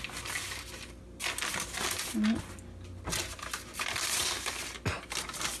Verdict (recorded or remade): recorded